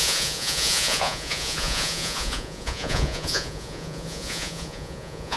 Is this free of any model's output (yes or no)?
no